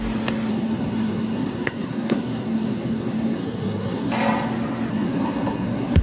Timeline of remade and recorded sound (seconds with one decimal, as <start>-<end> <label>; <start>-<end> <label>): 0.0-0.5 recorded; 0.5-4.1 remade; 4.1-4.9 recorded; 4.9-6.0 remade